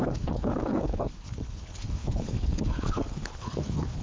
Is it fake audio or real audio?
fake